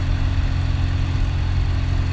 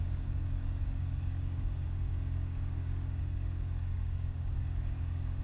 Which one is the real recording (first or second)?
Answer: first